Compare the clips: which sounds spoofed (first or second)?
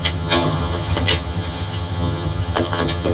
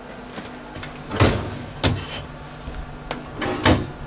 first